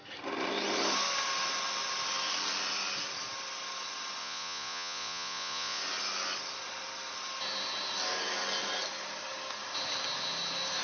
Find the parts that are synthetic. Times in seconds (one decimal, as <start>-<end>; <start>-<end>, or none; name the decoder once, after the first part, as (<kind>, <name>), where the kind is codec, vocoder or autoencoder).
4.2-5.8 (vocoder, Vocos)